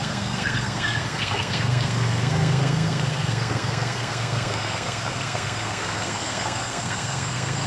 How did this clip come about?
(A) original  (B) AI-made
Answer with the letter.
B